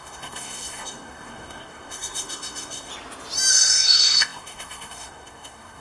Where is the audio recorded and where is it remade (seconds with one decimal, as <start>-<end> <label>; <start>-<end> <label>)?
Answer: 0.0-2.9 remade; 2.9-3.5 recorded; 3.5-5.8 remade